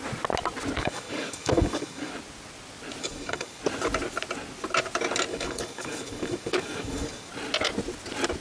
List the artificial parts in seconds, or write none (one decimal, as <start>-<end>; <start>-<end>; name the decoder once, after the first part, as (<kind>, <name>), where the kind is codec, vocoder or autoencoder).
0.8-2.1 (codec, DAC); 3.0-3.6; 5.3-7.3